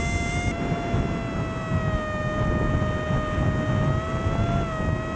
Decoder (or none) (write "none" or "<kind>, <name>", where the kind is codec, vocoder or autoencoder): none